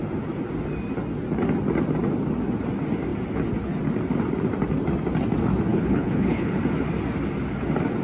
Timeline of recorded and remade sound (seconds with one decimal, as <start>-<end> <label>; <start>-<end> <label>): 0.0-5.7 recorded; 5.7-6.6 remade; 6.6-8.0 recorded